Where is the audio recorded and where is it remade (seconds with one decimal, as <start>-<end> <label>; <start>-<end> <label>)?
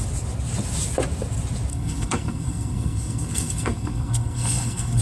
0.0-1.7 recorded; 1.7-5.0 remade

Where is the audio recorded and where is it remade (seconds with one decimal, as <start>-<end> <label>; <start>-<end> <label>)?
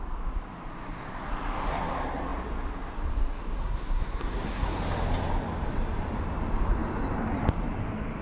0.0-3.6 recorded; 3.6-4.8 remade; 4.8-8.2 recorded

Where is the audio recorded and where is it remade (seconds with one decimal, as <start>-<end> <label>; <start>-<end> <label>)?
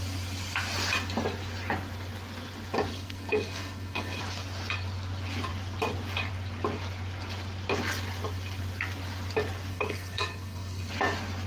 0.0-2.9 recorded; 2.9-4.2 remade; 4.2-9.7 recorded; 9.7-10.9 remade; 10.9-11.5 recorded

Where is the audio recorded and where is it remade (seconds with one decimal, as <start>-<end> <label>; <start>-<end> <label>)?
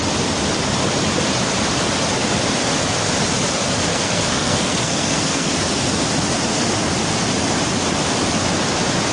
0.0-3.9 recorded; 3.9-5.5 remade; 5.5-9.1 recorded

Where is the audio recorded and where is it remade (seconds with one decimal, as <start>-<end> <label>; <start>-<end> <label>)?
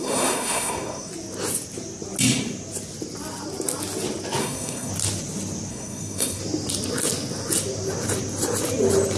0.0-1.1 remade; 1.1-4.4 recorded; 4.4-4.9 remade; 4.9-5.7 recorded; 5.7-6.4 remade; 6.4-9.2 recorded